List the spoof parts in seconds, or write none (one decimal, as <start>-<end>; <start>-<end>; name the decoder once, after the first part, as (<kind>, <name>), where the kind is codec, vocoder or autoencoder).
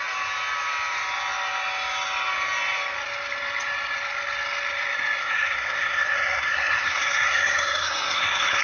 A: 5.2-8.6 (codec, SNAC)